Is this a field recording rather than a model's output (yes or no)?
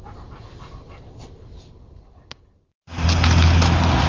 yes